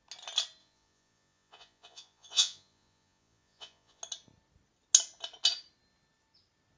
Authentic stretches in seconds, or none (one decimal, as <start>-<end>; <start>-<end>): 0.0-0.6; 4.0-6.8

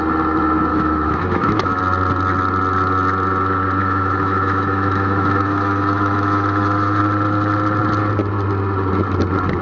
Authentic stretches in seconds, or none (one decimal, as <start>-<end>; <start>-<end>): 0.0-0.7; 1.8-3.8; 7.0-9.6

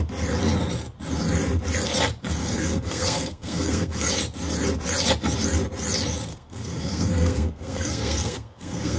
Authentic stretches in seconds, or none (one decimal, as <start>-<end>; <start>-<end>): 0.0-2.4; 4.1-6.3

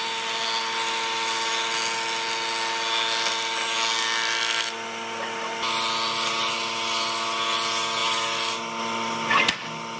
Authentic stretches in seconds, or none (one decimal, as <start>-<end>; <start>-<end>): 0.0-10.0

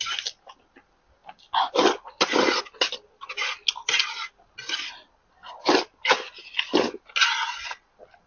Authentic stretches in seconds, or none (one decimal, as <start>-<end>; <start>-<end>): 0.0-8.3

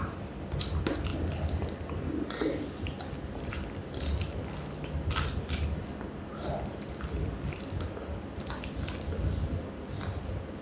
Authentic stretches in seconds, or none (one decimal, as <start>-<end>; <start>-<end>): 0.0-10.6

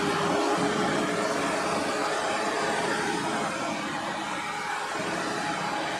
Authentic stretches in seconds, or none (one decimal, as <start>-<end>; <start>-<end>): 0.0-6.0

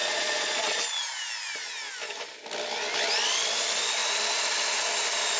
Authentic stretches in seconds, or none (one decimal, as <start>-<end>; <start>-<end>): 0.8-5.4